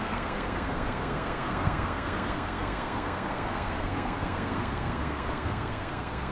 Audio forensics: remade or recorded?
remade